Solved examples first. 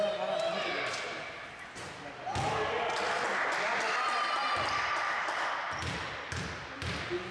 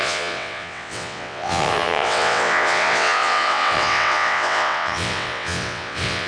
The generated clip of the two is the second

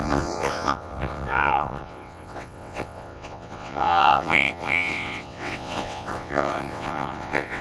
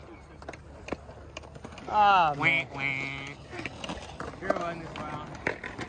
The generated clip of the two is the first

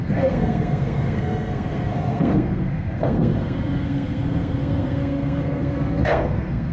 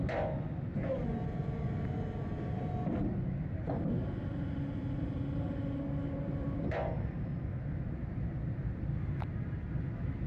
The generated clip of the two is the first